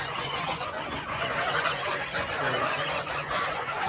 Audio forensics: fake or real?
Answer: fake